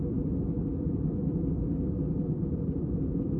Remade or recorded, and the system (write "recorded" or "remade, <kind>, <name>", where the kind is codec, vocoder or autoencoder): recorded